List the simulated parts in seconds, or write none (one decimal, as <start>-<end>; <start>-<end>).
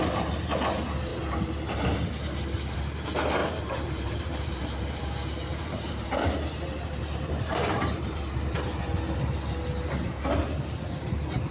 3.4-8.2